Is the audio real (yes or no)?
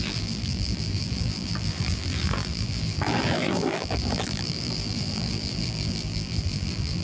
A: no